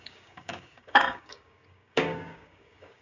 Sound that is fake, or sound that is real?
fake